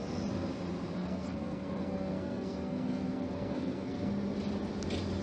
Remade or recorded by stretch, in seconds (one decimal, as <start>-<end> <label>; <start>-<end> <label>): 0.0-1.0 recorded; 1.0-4.1 remade; 4.1-5.2 recorded